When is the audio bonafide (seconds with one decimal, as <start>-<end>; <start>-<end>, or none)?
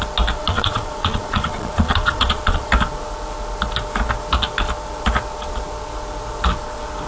0.0-0.4; 2.7-7.1